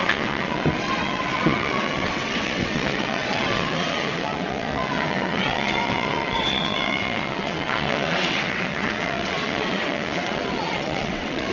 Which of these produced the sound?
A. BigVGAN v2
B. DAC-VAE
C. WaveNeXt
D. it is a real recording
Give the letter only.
C